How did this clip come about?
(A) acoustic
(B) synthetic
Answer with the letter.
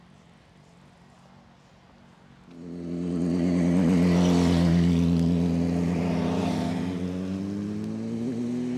A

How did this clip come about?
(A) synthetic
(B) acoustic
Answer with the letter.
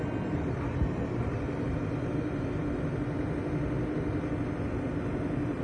B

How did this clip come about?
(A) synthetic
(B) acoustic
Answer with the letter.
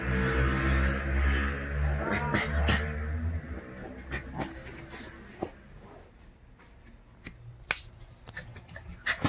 B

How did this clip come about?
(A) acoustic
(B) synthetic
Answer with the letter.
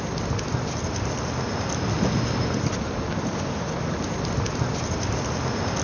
A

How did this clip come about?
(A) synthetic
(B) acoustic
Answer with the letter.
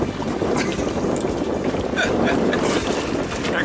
B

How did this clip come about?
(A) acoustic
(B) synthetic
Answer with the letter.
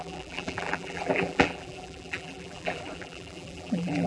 B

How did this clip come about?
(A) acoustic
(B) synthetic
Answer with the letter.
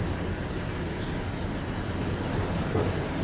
A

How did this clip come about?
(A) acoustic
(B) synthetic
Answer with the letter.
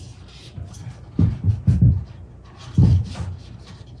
A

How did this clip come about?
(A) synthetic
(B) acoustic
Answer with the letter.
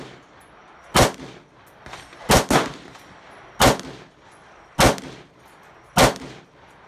B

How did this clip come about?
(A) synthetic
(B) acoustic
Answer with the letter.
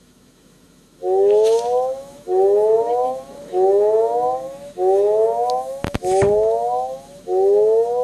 A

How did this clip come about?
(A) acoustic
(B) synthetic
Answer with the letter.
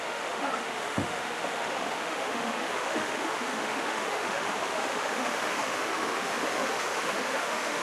B